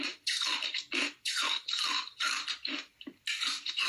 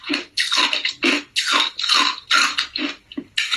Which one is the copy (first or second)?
first